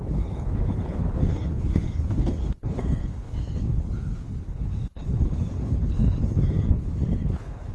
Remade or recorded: remade